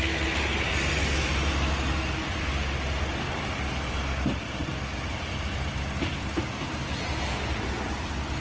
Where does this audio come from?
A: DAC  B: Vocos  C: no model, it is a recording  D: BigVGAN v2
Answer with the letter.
C